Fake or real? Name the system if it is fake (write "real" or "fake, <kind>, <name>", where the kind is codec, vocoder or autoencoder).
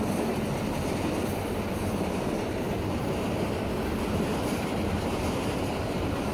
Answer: real